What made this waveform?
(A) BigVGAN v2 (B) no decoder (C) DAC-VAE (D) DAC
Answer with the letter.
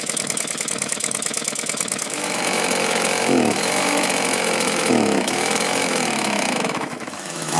C